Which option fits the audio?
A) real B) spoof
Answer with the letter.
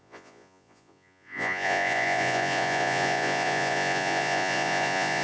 B